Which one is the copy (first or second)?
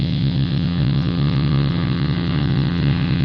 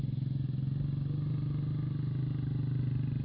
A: first